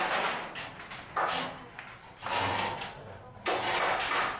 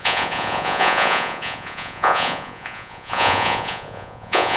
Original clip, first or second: first